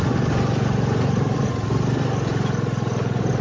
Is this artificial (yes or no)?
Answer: no